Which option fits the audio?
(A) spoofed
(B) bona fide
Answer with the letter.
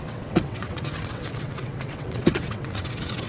A